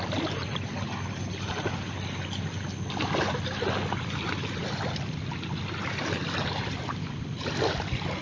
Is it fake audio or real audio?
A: real